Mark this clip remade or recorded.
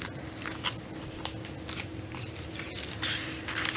recorded